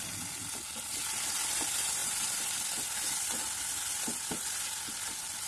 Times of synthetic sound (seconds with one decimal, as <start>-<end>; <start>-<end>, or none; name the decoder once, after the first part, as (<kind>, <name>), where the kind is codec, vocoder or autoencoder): none

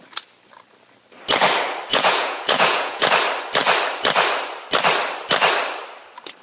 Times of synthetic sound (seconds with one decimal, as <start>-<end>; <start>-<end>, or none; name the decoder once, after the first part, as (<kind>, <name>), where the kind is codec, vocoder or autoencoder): 1.9-3.1 (vocoder, Vocos)